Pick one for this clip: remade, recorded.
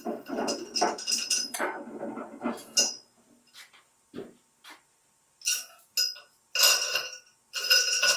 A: recorded